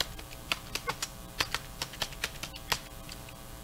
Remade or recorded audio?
recorded